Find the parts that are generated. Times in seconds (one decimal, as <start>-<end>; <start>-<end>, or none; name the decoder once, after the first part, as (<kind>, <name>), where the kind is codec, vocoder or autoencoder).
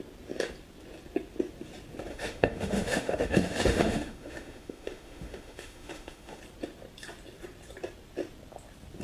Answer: 2.1-6.4 (autoencoder, DAC-VAE)